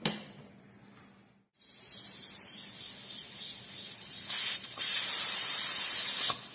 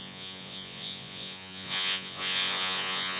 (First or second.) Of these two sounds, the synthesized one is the second